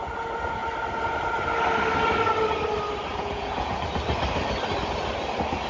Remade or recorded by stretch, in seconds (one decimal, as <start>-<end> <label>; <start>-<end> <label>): 0.0-3.1 recorded; 3.1-3.8 remade; 3.8-5.7 recorded